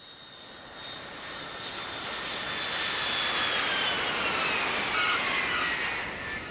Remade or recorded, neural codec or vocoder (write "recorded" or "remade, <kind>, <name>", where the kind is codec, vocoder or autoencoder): recorded